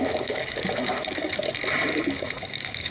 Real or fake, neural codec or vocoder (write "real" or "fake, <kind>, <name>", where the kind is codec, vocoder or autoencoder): fake, codec, DAC